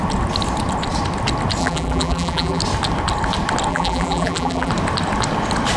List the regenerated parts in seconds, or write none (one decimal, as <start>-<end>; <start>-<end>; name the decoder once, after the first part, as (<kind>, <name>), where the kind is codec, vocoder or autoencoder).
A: 1.6-2.6 (vocoder, BigVGAN v2); 3.7-4.7